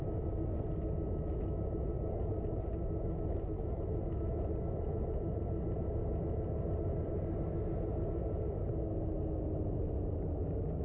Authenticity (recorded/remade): recorded